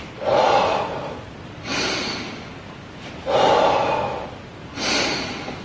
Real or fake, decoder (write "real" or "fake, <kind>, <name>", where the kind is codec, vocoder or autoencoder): real